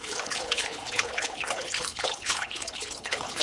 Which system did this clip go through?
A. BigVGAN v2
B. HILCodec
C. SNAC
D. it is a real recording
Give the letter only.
B